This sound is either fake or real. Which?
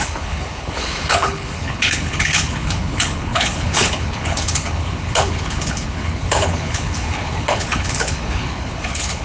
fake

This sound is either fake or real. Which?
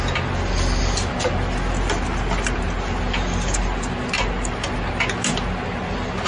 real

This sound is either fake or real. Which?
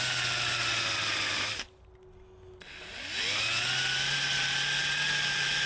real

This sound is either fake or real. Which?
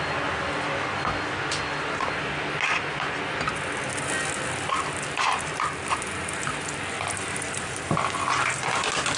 real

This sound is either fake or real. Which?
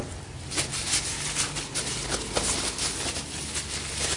real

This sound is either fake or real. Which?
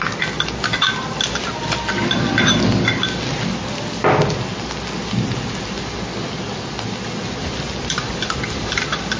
real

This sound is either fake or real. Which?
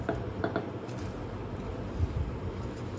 real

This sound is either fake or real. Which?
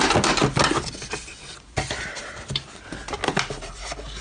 real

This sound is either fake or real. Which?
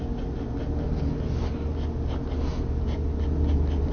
real